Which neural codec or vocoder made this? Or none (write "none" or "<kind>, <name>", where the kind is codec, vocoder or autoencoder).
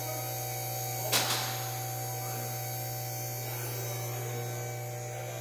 none